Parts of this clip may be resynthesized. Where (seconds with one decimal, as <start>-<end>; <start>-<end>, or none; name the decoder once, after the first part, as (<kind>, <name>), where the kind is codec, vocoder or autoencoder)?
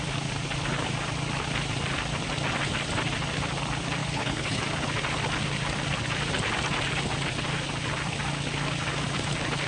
4.0-4.6 (codec, HILCodec)